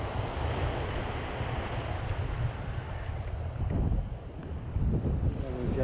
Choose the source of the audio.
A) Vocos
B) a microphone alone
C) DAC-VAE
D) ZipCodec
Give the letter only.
B